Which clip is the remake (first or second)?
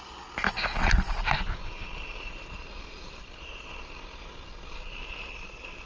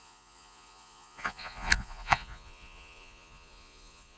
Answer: second